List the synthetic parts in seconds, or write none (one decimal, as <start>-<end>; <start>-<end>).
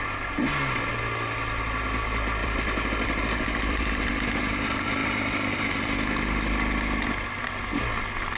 2.4-4.1; 5.0-5.7